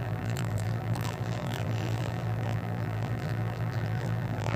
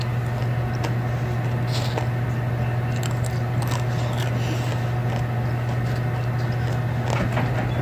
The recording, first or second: second